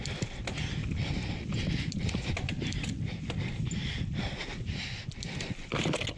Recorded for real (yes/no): yes